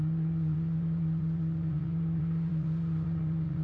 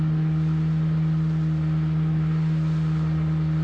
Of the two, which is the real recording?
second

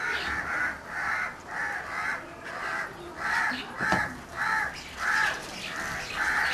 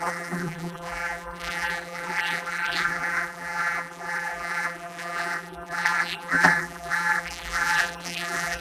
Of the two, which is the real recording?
first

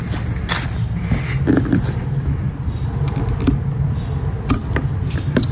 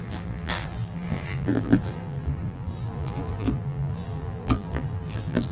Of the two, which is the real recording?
first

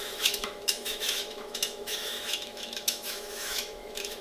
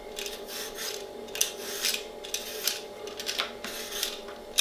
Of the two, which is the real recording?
second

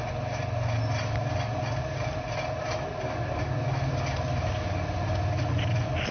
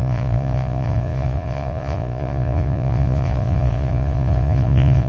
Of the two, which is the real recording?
first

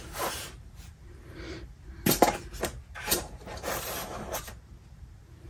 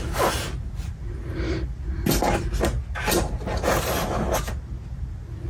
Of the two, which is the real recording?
second